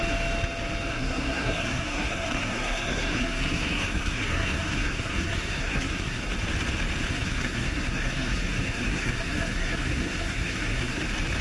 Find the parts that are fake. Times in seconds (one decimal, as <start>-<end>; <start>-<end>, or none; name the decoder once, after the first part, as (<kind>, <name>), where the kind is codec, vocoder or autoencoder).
0.9-6.2 (codec, SNAC); 7.1-11.0